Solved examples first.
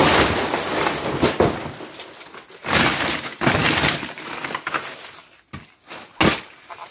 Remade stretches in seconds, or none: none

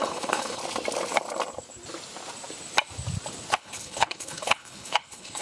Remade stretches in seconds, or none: 0.0-0.6; 3.5-5.4

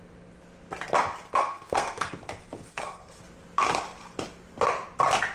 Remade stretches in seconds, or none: 1.4-2.1; 2.7-3.2

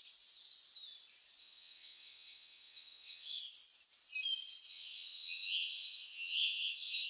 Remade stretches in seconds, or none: 1.4-3.4; 4.7-7.1